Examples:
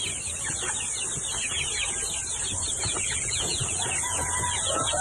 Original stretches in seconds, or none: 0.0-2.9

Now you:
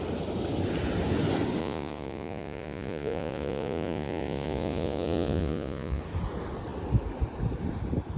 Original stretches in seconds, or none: 0.0-1.6; 6.0-8.2

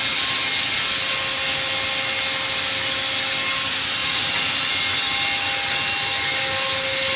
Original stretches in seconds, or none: 0.0-4.0; 4.5-7.2

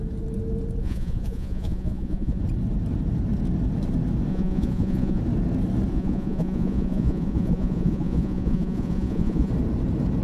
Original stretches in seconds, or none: 0.0-0.8; 2.4-4.3; 5.2-5.9; 9.5-10.2

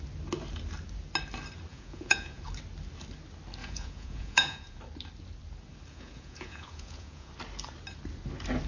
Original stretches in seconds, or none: 0.0-1.7; 2.4-3.6; 4.8-5.9; 7.3-8.7

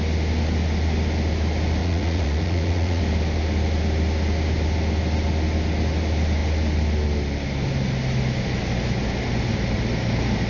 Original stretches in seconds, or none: 0.0-1.8; 3.0-10.5